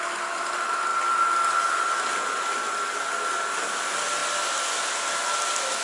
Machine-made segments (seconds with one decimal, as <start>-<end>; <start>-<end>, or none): 0.0-0.9; 3.3-4.2